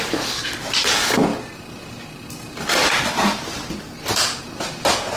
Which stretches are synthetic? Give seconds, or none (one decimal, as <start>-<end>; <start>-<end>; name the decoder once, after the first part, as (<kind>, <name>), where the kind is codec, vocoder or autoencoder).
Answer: none